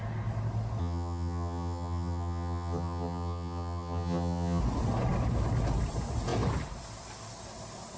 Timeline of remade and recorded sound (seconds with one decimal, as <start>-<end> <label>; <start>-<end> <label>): 0.0-0.8 recorded; 0.8-4.6 remade; 4.6-8.0 recorded